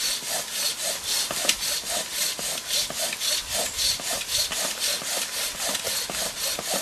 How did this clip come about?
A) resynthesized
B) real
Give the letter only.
B